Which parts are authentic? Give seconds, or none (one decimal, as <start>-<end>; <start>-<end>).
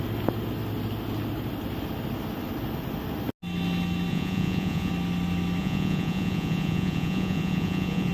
0.0-4.1; 4.9-5.6